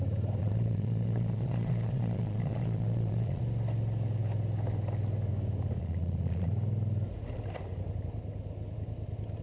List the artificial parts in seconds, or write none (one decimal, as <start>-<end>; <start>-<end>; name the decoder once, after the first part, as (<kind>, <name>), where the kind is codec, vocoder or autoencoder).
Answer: 0.4-3.4 (vocoder, Vocos); 5.8-6.5

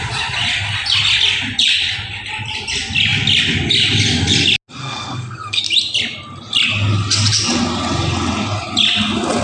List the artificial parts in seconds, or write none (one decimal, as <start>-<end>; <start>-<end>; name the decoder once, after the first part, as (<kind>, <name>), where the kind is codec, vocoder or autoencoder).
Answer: 4.8-5.6 (codec, SNAC)